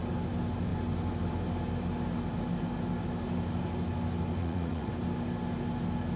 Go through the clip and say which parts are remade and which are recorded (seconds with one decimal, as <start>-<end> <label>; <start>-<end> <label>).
0.0-4.4 recorded; 4.4-4.9 remade; 4.9-6.2 recorded

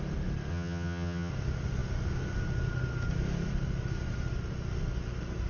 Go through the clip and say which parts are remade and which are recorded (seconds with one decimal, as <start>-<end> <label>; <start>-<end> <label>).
0.0-0.5 recorded; 0.5-1.3 remade; 1.3-5.5 recorded

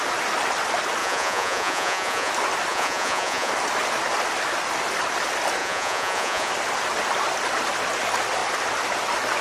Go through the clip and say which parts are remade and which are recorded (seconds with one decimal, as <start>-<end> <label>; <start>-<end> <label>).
0.0-1.0 recorded; 1.0-2.3 remade; 2.3-2.7 recorded; 2.7-3.5 remade; 3.5-5.6 recorded; 5.6-6.5 remade; 6.5-9.4 recorded

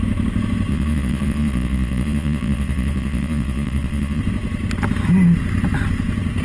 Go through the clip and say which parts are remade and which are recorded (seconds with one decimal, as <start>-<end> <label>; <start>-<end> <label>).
0.0-0.7 recorded; 0.7-4.2 remade; 4.2-6.4 recorded

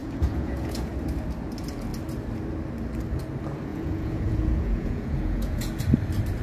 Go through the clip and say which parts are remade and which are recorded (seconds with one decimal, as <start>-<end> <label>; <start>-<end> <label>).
0.0-0.9 remade; 0.9-3.7 recorded; 3.7-5.8 remade; 5.8-6.4 recorded